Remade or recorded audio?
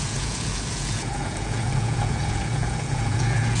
remade